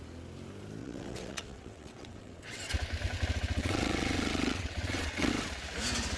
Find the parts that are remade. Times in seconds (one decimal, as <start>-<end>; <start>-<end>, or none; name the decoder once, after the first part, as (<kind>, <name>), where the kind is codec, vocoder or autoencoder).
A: 0.8-2.7 (vocoder, WaveNeXt); 3.6-5.3